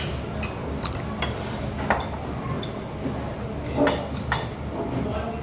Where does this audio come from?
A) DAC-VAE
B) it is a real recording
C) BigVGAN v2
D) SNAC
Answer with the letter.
B